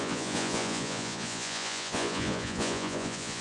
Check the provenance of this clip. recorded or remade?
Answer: remade